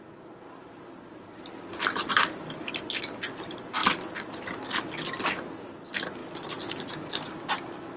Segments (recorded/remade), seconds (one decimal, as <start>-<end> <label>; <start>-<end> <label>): 0.0-8.0 recorded